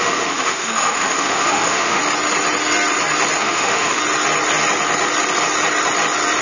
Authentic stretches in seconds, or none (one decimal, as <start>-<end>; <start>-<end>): 2.0-3.4; 4.0-6.4